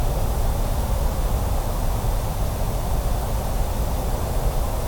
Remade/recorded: recorded